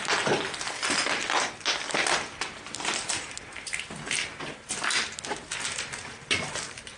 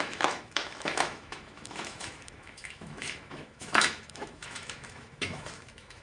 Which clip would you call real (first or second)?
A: first